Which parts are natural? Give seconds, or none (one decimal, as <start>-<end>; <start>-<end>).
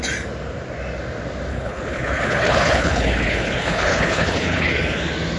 0.0-1.5; 4.7-5.4